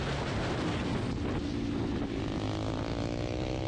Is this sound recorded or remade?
recorded